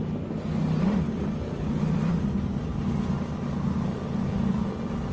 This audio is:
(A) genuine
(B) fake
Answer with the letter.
A